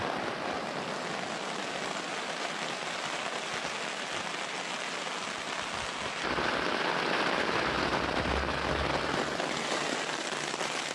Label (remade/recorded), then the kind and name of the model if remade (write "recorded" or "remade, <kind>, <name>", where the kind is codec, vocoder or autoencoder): recorded